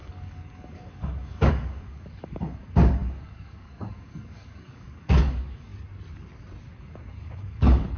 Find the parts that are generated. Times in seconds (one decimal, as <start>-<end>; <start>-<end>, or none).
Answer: 0.0-5.7; 6.8-8.0